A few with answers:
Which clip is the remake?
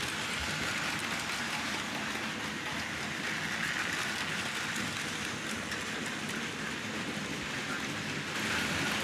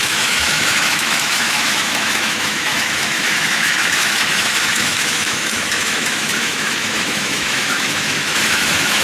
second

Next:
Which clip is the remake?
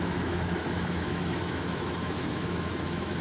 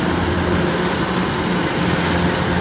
first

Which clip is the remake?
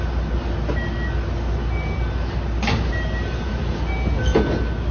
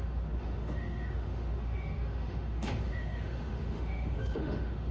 second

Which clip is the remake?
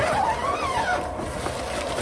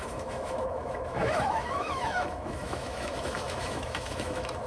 second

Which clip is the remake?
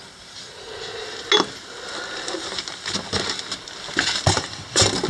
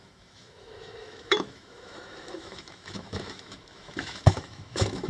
second